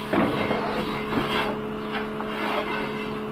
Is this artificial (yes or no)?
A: no